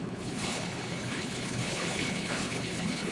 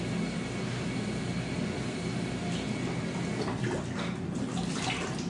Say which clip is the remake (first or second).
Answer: first